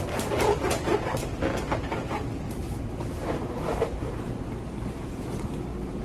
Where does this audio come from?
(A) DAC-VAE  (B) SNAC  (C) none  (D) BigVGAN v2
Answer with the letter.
C